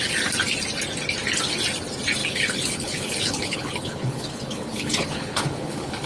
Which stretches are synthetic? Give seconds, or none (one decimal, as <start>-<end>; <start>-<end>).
2.2-6.1